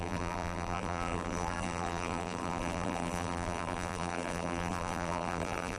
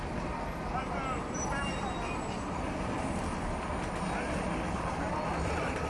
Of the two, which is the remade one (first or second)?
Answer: first